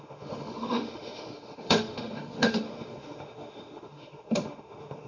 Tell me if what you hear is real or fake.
fake